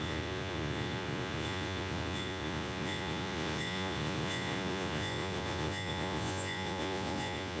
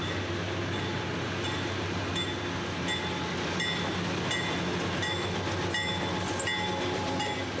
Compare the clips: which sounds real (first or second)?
second